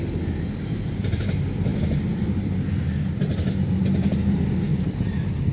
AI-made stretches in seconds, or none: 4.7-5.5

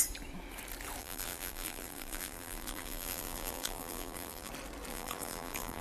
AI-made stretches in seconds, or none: 1.0-4.5; 4.9-5.8

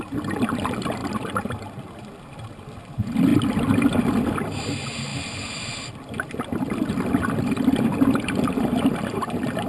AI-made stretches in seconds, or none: none